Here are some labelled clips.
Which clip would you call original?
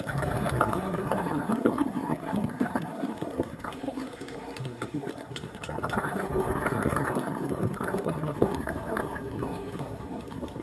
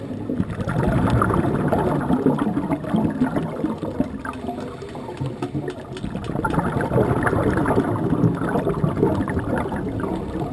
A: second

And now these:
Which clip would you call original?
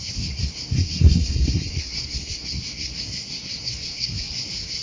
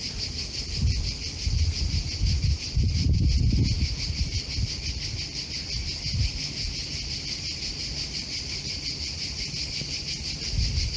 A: second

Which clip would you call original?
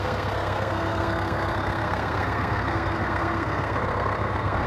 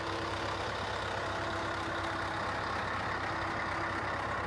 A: second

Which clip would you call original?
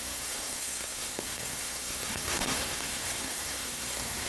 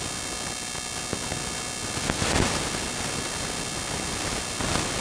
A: second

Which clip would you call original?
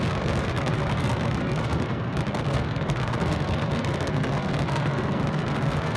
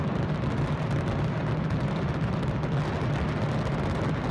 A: second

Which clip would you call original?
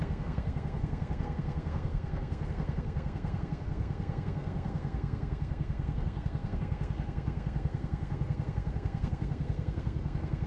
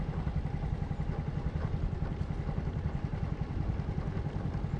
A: second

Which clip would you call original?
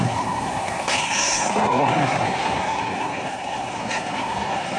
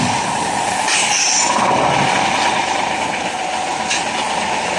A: second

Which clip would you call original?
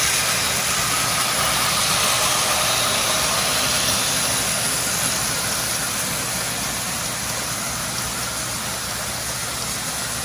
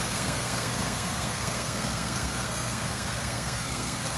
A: first